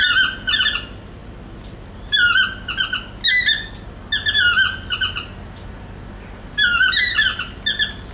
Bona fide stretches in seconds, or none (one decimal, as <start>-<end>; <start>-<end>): 0.0-8.1